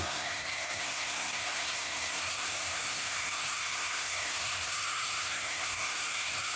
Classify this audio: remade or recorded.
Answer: remade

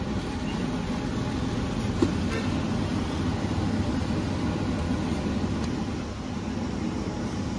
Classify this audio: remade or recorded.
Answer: recorded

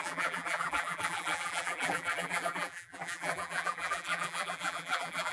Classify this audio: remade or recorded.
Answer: remade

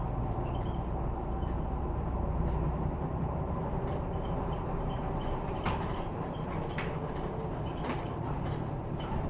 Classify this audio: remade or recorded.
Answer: remade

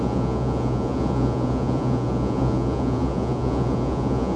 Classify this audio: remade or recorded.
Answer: remade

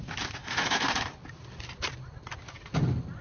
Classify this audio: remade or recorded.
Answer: recorded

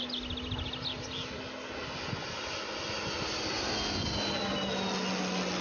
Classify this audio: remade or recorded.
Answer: recorded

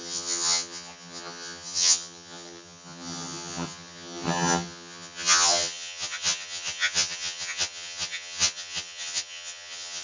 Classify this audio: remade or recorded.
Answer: remade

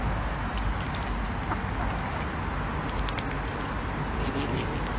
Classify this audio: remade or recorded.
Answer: recorded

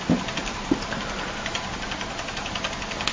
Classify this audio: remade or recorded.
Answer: remade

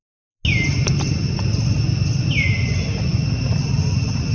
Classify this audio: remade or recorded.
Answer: recorded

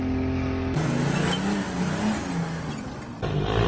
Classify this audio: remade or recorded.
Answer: recorded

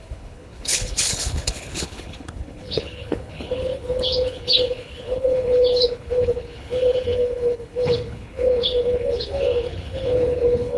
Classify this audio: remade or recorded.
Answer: remade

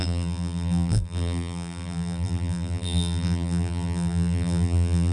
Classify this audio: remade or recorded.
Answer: remade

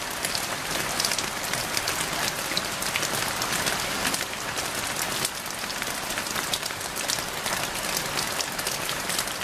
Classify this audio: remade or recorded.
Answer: remade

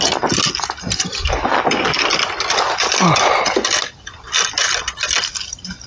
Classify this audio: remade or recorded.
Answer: recorded